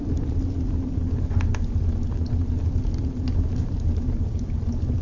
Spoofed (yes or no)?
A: no